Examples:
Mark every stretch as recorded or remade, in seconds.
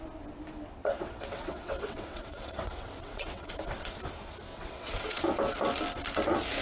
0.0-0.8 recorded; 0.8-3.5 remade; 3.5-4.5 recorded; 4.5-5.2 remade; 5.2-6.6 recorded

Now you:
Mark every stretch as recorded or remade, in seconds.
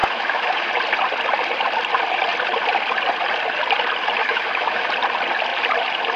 0.0-0.7 remade; 0.7-4.2 recorded; 4.2-4.9 remade; 4.9-6.2 recorded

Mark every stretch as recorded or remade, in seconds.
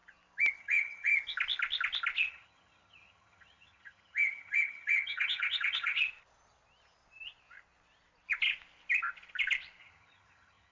0.0-0.6 recorded; 0.6-1.1 remade; 1.1-2.3 recorded; 2.3-6.0 remade; 6.0-9.8 recorded; 9.8-10.7 remade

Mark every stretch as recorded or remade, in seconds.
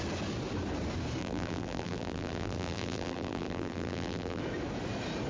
0.0-1.2 recorded; 1.2-4.4 remade; 4.4-5.3 recorded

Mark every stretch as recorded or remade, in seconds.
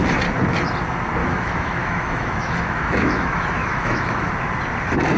0.0-1.2 recorded; 1.2-4.3 remade; 4.3-5.2 recorded